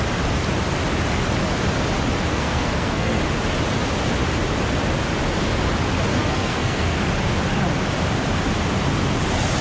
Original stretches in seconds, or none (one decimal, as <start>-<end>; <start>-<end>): 0.0-2.3; 3.2-6.1; 7.0-9.6